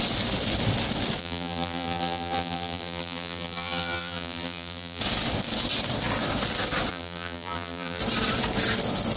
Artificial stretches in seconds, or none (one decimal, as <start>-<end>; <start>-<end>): 1.2-5.0; 6.9-8.0